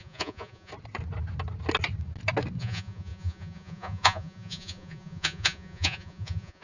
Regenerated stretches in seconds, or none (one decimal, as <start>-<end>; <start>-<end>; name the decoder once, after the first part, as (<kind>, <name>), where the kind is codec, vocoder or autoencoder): 0.0-0.7 (vocoder, Vocos); 2.6-6.6